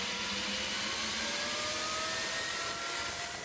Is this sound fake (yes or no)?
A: no